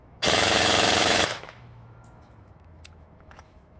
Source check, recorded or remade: remade